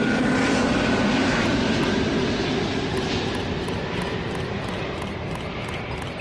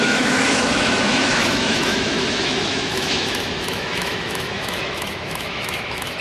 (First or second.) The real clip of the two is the first